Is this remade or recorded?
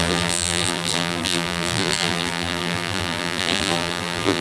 remade